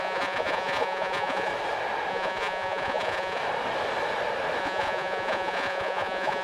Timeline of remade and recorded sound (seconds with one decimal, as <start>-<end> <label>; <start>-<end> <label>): 0.0-1.5 remade; 1.5-2.1 recorded; 2.1-3.4 remade; 3.4-4.6 recorded; 4.6-6.4 remade